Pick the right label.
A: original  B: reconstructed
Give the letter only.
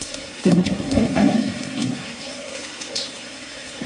B